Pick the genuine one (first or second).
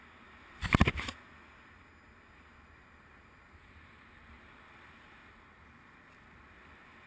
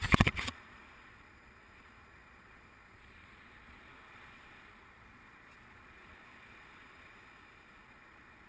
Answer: first